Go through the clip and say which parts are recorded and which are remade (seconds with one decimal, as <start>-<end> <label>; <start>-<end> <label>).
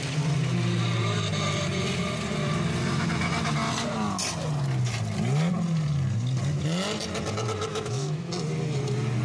0.0-7.7 recorded; 7.7-8.3 remade; 8.3-9.2 recorded